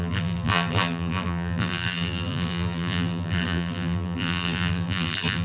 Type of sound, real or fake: fake